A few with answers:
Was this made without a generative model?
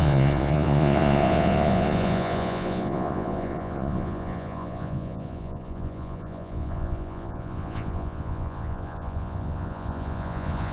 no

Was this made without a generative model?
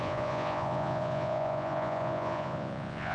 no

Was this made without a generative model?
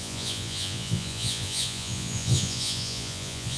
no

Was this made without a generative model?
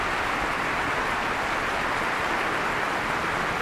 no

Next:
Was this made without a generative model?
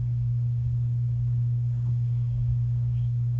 no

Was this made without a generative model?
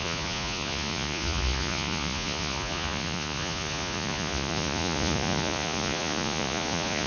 no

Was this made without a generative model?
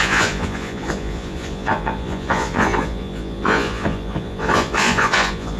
no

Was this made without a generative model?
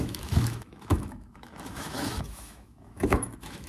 no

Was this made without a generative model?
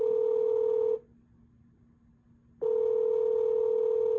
yes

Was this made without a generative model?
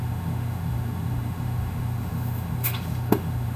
no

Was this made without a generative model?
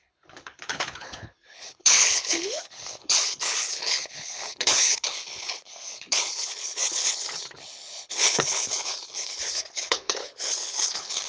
no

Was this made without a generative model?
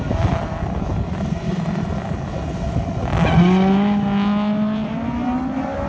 yes